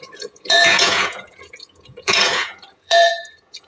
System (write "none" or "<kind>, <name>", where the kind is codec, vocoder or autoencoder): vocoder, Vocos